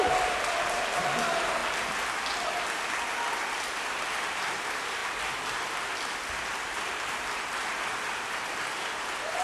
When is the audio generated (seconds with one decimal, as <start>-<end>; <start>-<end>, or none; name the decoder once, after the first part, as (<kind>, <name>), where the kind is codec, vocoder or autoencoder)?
0.0-1.6 (vocoder, BigVGAN v2); 4.6-5.0; 6.3-9.4